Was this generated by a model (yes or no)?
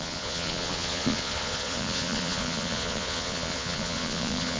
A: yes